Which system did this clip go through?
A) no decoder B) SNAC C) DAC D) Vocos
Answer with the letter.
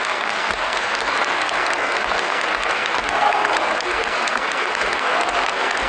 B